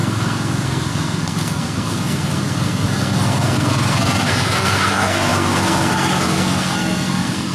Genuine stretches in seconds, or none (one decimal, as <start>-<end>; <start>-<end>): none